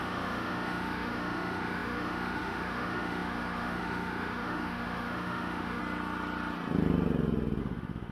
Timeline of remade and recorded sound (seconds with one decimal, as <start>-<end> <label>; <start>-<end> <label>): 0.0-5.8 remade; 5.8-7.6 recorded; 7.6-8.1 remade